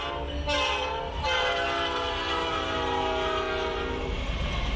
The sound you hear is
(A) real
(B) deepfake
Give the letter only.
A